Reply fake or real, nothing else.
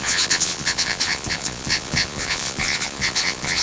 fake